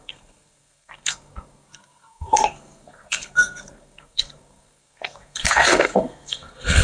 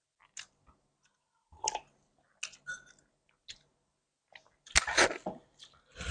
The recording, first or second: second